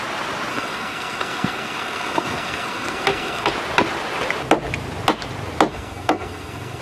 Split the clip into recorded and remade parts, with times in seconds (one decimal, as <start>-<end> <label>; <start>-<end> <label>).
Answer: 0.0-0.5 recorded; 0.5-3.5 remade; 3.5-5.7 recorded; 5.7-6.8 remade